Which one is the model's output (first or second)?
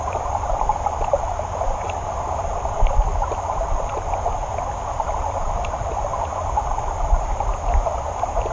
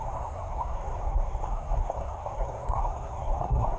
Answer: second